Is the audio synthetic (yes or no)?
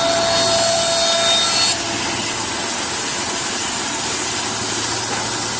no